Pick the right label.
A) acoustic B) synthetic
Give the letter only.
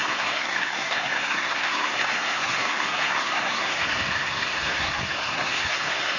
B